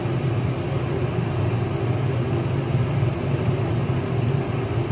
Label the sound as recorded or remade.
recorded